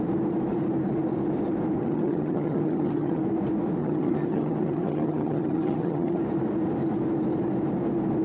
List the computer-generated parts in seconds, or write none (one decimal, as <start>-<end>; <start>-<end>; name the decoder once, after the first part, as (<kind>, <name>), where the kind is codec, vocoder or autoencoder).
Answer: 1.8-3.2 (vocoder, HiFi-GAN); 3.8-6.2